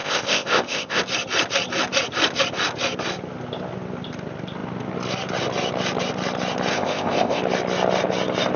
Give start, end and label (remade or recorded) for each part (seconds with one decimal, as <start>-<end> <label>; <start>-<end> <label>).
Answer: 0.0-1.0 remade; 1.0-6.7 recorded; 6.7-7.4 remade; 7.4-8.6 recorded